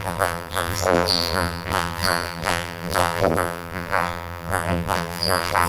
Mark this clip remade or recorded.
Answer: remade